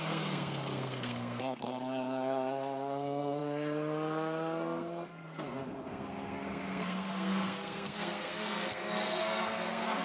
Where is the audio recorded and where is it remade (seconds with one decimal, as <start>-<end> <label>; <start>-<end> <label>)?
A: 0.0-10.0 remade